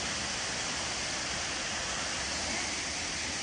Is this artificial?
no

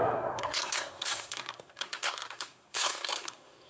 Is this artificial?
yes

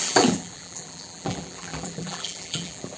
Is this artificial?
yes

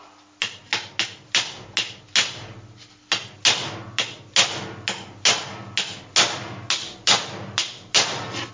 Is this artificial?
no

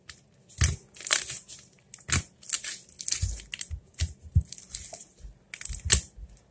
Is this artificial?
no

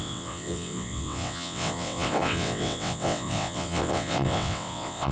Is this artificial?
yes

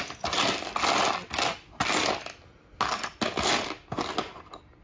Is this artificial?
no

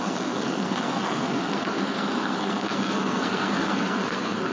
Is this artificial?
yes